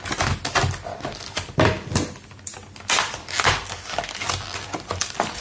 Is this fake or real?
real